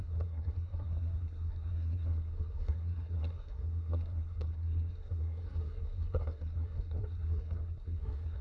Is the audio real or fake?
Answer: fake